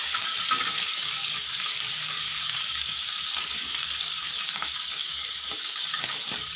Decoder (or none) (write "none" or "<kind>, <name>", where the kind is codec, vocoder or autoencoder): codec, DAC